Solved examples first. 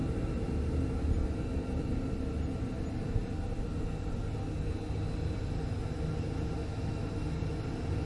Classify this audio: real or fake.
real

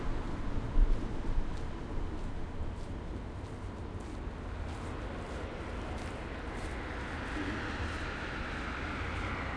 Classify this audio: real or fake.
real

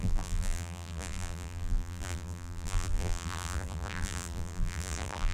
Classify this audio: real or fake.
fake